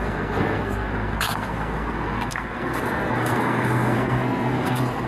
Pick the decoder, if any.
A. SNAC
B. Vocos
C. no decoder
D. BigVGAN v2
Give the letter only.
A